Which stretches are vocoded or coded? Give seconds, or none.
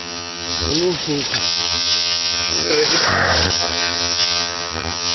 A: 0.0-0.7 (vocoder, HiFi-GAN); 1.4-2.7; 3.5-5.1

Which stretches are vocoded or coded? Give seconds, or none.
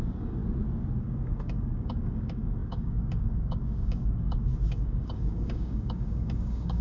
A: 0.0-0.4 (codec, DAC); 1.0-6.8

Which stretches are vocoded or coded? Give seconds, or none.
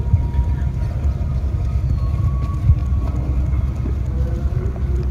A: 1.3-1.9 (codec, DAC)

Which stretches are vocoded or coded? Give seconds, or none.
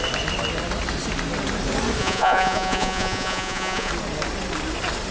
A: 2.0-3.9 (vocoder, Vocos)